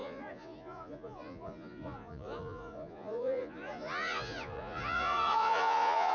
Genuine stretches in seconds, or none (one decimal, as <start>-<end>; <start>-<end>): none